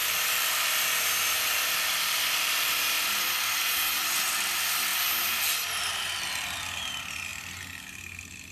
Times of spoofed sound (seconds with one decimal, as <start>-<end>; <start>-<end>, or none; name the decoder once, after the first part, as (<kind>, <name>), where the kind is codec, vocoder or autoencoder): 0.0-3.2 (vocoder, BigVGAN v2)